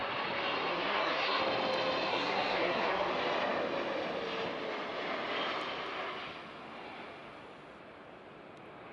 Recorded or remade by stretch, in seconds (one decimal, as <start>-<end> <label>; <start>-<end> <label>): 0.0-0.7 recorded; 0.7-1.4 remade; 1.4-2.1 recorded; 2.1-3.1 remade; 3.1-8.9 recorded